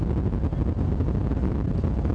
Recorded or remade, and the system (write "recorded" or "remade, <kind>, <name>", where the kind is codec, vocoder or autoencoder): recorded